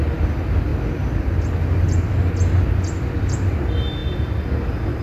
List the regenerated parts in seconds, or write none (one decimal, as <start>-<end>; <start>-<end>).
none